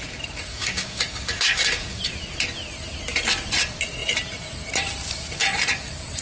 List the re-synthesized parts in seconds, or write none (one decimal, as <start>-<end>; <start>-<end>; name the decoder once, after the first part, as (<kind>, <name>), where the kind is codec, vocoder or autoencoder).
0.5-2.0 (codec, DAC)